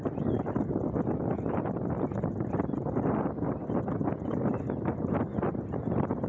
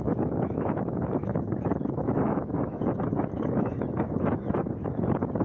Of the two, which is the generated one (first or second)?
second